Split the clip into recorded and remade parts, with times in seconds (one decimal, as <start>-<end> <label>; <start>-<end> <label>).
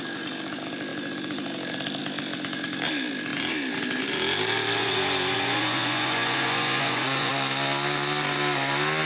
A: 0.0-4.8 recorded; 4.8-7.3 remade; 7.3-9.1 recorded